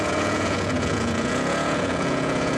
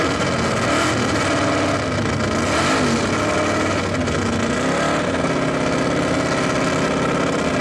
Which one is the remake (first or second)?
first